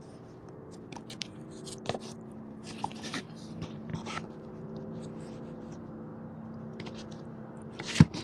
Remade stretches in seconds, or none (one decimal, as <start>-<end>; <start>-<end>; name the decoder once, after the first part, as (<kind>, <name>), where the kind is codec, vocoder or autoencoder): 0.0-6.1 (vocoder, BigVGAN v2); 6.9-8.2